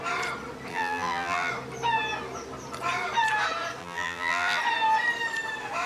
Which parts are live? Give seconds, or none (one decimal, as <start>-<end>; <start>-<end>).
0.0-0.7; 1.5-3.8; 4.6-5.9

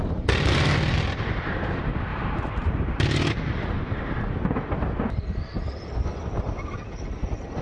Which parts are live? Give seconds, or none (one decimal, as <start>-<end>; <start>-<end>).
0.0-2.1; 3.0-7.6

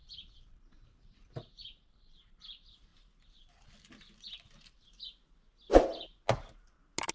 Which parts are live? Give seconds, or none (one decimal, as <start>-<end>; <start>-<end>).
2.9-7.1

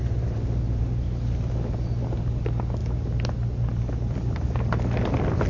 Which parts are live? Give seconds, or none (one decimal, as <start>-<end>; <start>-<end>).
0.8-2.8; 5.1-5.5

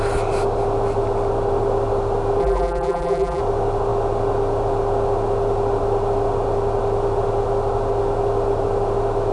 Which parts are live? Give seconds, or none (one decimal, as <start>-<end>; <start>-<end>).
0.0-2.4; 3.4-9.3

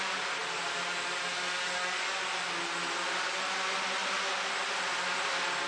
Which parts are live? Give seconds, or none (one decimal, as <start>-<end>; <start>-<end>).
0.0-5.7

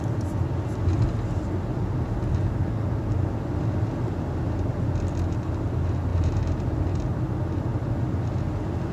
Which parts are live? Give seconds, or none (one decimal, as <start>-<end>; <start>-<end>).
0.0-6.1; 7.2-8.9

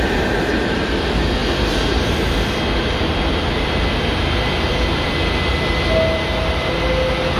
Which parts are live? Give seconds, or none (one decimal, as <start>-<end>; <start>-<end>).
0.0-7.4